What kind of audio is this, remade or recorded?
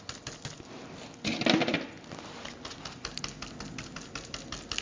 recorded